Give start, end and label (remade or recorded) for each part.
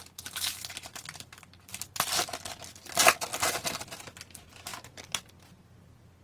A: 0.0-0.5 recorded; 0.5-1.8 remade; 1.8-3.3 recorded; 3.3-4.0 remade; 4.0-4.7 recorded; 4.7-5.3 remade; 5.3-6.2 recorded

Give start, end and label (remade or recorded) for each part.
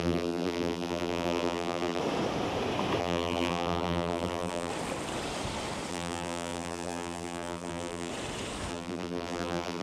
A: 0.0-2.0 remade; 2.0-3.0 recorded; 3.0-4.7 remade; 4.7-5.9 recorded; 5.9-8.1 remade; 8.1-8.7 recorded; 8.7-9.8 remade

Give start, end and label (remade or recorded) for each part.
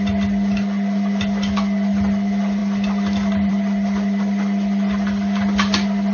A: 0.0-6.1 recorded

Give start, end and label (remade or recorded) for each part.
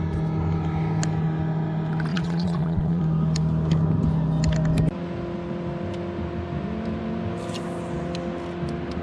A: 0.0-2.1 recorded; 2.1-3.0 remade; 3.0-9.0 recorded